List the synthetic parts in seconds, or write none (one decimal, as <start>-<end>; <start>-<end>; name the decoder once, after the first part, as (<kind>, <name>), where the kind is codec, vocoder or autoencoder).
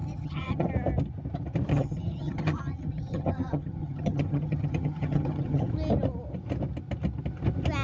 0.0-0.7 (vocoder, HiFi-GAN); 1.7-5.7